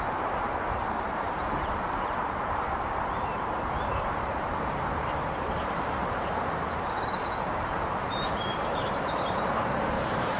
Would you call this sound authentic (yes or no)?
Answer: no